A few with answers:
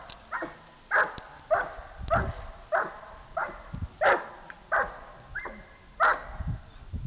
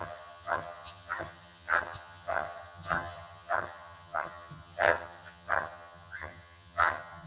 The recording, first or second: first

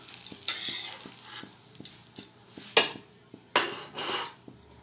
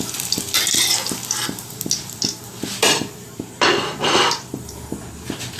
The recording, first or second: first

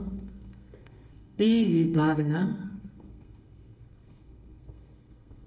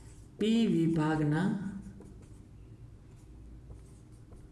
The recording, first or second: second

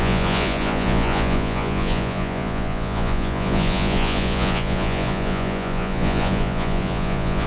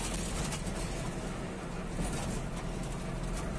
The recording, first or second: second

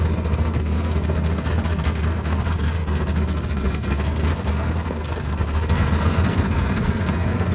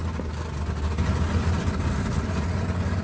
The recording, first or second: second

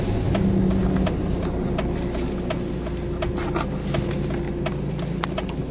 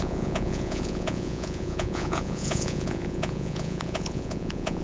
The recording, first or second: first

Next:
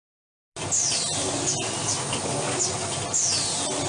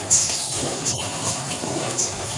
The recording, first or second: first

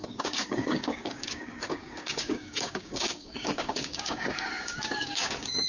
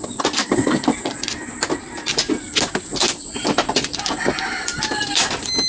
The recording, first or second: second